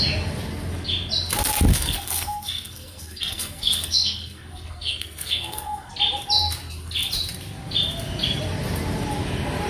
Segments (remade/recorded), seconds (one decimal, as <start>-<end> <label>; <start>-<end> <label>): 0.0-1.7 recorded; 1.7-5.9 remade; 5.9-9.7 recorded